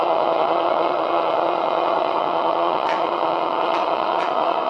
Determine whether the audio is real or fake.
fake